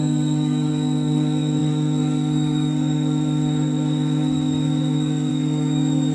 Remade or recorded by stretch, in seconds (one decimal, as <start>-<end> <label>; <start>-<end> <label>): 0.0-6.1 remade